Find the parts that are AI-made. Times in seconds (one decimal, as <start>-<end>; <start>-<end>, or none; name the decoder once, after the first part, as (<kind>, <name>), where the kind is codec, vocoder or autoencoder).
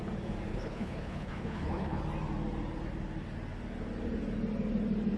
0.5-2.0 (codec, HILCodec)